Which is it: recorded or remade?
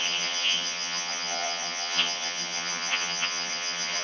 remade